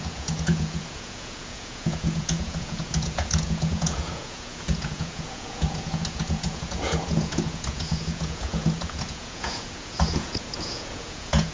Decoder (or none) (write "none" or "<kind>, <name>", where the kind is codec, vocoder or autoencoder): vocoder, Vocos